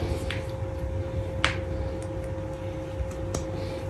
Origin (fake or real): real